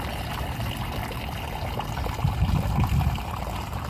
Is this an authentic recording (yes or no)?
yes